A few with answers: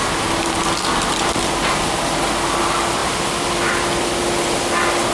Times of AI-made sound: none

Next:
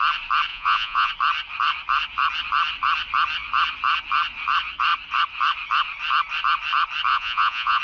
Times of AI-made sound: 0.5-1.1 (vocoder, Vocos); 7.1-7.8

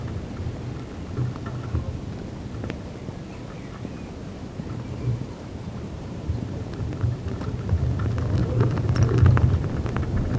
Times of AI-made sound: 4.2-7.5 (vocoder, BigVGAN v2); 8.4-9.2

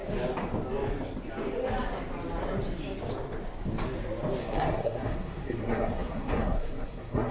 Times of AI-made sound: 4.4-7.3 (codec, SNAC)

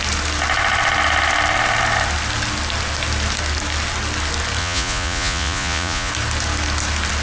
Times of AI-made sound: 4.6-6.1 (vocoder, Vocos)

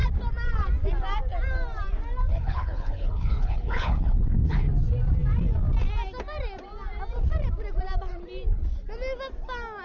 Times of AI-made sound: 2.3-4.7 (codec, HILCodec)

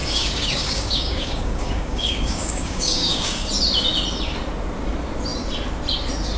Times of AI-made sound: 0.0-3.5 (codec, DAC)

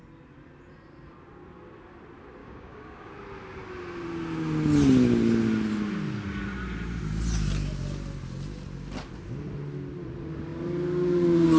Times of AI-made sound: 2.4-3.1 (codec, DAC)